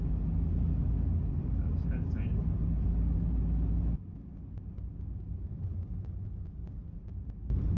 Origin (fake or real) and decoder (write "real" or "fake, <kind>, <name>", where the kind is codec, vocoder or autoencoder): real